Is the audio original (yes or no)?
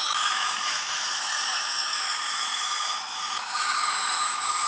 no